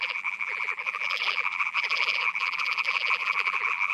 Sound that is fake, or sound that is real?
fake